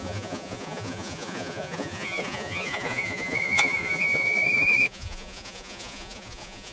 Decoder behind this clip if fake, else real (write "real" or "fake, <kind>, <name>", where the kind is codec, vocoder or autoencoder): fake, vocoder, Vocos